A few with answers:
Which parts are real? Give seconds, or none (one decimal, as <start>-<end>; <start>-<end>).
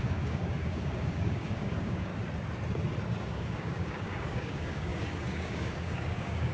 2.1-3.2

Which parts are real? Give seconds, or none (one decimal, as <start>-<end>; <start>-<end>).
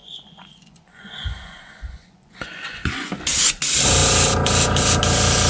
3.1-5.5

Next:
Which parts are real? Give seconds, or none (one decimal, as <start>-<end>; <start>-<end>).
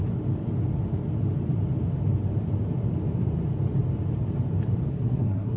0.0-4.9